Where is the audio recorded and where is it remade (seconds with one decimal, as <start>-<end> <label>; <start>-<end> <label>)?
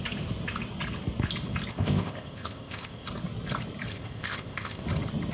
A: 0.0-1.7 recorded; 1.7-3.1 remade; 3.1-3.9 recorded; 3.9-4.8 remade; 4.8-5.3 recorded